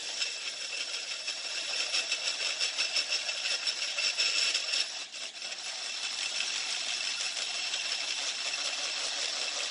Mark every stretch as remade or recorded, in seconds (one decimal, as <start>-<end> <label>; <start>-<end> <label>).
0.0-2.2 remade; 2.2-4.6 recorded; 4.6-9.1 remade; 9.1-9.7 recorded